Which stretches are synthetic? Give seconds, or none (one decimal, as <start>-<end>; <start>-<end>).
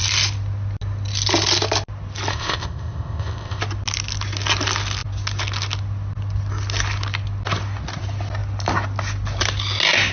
2.3-3.6